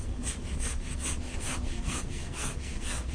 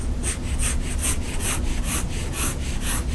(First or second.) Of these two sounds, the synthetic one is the first